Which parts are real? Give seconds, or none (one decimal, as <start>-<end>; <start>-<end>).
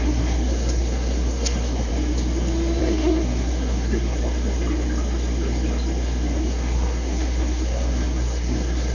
1.9-2.8; 4.2-6.4